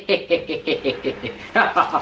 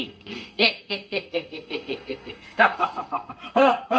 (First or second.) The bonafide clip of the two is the first